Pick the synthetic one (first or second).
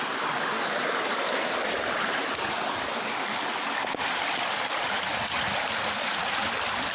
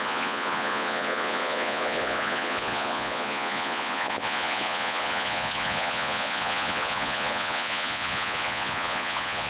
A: second